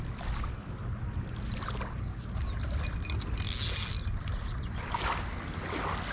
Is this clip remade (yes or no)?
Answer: no